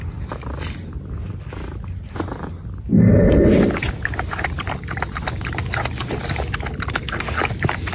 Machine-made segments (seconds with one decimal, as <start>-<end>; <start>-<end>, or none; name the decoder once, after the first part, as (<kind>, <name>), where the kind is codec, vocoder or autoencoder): none